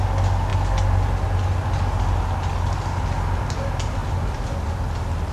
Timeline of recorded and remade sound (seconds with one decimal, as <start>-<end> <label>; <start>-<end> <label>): 0.0-4.0 recorded; 4.0-4.8 remade; 4.8-5.3 recorded